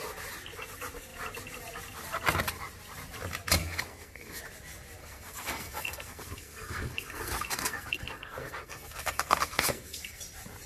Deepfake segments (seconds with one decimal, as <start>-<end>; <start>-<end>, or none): 3.6-4.4; 5.0-10.2